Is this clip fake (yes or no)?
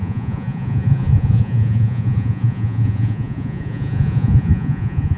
yes